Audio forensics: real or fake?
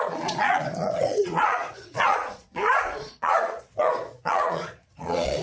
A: fake